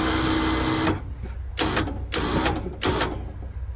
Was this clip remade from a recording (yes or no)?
no